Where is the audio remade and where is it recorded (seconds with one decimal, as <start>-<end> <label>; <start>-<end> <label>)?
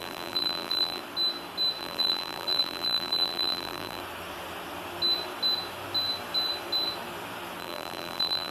0.0-1.0 remade; 1.0-1.8 recorded; 1.8-4.0 remade; 4.0-7.6 recorded; 7.6-8.5 remade